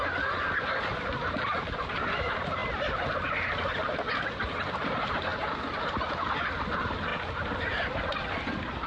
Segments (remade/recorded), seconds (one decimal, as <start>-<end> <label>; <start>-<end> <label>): 0.0-8.9 recorded